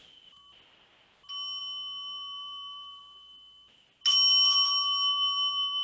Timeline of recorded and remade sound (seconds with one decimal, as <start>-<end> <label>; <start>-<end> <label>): 0.0-5.8 recorded